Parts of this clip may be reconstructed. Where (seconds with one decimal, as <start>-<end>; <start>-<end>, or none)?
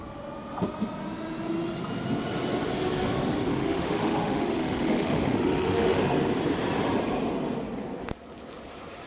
3.5-6.0